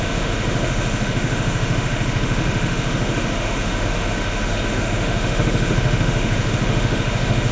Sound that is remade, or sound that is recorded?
remade